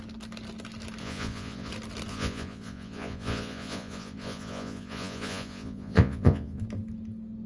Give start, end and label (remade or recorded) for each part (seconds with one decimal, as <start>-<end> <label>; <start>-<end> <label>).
0.0-1.0 recorded; 1.0-1.7 remade; 1.7-2.1 recorded; 2.1-6.6 remade; 6.6-7.5 recorded